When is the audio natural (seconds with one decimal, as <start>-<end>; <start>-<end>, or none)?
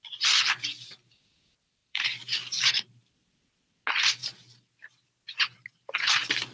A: 0.0-1.8; 3.1-6.5